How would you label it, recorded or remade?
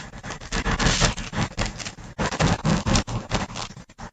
recorded